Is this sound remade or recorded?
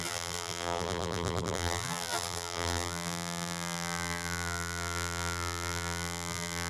remade